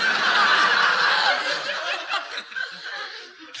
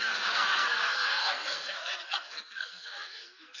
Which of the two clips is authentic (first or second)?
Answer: first